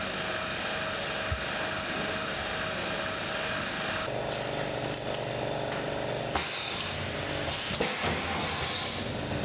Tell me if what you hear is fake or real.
real